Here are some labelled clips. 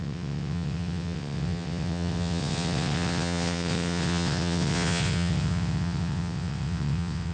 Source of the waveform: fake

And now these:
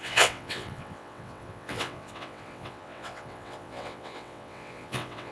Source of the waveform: fake